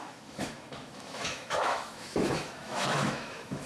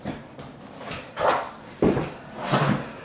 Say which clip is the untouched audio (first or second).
second